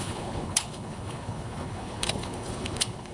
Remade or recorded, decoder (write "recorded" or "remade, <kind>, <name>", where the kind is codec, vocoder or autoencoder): remade, codec, HILCodec